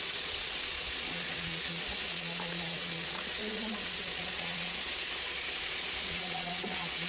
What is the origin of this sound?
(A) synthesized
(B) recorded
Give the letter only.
A